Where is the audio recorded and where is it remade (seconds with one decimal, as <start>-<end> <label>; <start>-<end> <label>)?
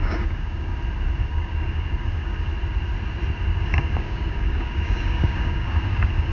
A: 0.0-0.7 remade; 0.7-1.2 recorded; 1.2-2.5 remade; 2.5-3.6 recorded; 3.6-6.3 remade